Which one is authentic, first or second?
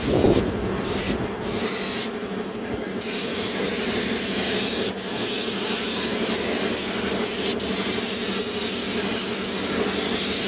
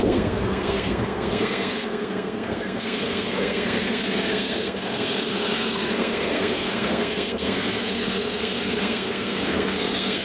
first